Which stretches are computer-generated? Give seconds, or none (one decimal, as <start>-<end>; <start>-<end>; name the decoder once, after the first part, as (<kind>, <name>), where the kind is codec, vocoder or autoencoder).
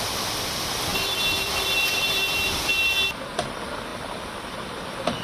0.0-2.7 (vocoder, BigVGAN v2); 3.5-5.2